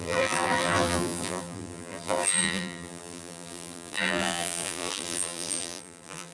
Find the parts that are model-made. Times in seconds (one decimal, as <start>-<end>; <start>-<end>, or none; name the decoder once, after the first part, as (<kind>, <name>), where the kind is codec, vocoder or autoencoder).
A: 0.0-6.3 (vocoder, BigVGAN v2)